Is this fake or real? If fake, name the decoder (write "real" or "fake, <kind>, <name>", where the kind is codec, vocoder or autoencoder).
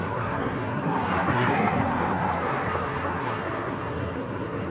fake, codec, SNAC